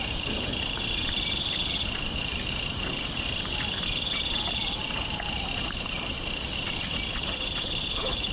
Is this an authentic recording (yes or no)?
no